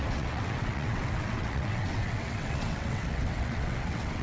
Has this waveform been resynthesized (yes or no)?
yes